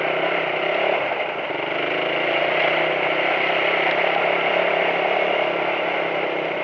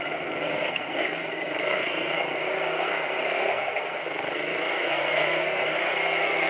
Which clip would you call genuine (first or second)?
first